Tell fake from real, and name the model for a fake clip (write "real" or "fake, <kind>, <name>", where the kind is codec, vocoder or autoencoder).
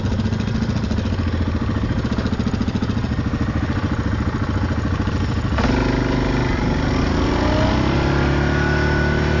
real